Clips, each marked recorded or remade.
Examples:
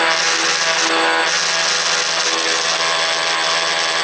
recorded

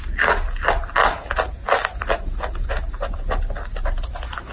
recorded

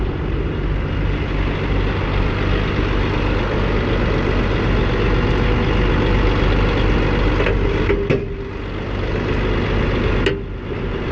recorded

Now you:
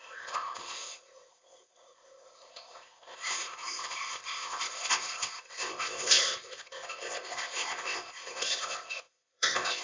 remade